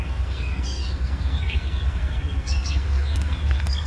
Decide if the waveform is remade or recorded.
remade